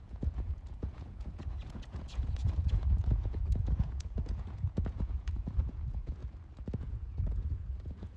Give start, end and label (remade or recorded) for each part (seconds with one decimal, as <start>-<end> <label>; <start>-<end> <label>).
0.0-6.2 remade; 6.2-6.8 recorded; 6.8-8.2 remade